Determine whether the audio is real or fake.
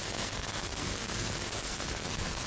fake